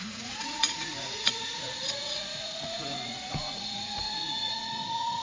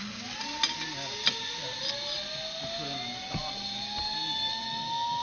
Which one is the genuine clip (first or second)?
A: second